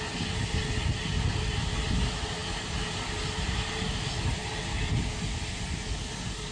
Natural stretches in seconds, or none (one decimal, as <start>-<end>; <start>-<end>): 0.0-6.5